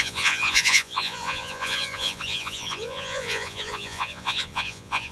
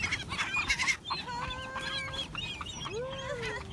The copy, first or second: first